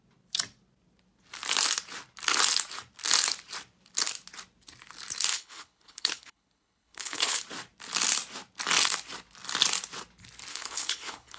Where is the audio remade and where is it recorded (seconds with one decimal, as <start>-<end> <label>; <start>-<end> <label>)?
0.0-5.3 recorded; 5.3-7.4 remade; 7.4-10.5 recorded; 10.5-11.4 remade